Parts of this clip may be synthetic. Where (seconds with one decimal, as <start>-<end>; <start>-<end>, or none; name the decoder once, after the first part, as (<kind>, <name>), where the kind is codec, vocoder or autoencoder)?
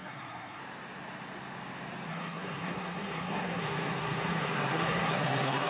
0.0-0.6 (codec, SNAC); 2.1-5.7